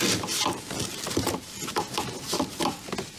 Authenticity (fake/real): real